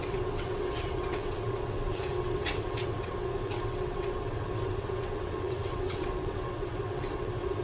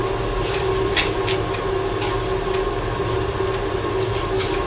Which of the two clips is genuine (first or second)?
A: second